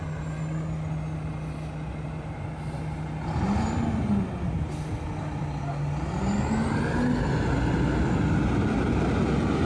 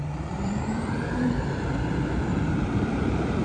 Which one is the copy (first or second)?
second